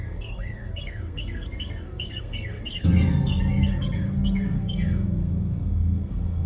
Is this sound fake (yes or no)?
yes